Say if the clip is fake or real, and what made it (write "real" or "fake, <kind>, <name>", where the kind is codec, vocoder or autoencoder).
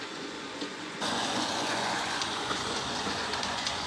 fake, vocoder, Vocos